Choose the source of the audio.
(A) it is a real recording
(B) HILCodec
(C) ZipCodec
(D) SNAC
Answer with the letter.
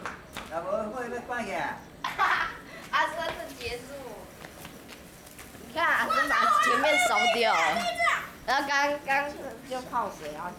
A